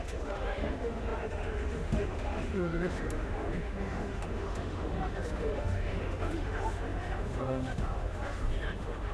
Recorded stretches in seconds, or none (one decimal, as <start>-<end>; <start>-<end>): none